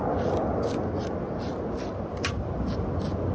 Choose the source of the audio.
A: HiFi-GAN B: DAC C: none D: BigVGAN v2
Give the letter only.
C